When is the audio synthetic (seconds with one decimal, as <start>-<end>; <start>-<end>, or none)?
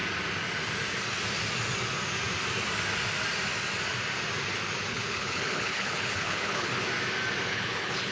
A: 4.9-6.7; 7.4-8.1